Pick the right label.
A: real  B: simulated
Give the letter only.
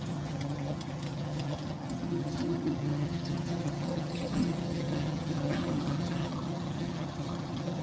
B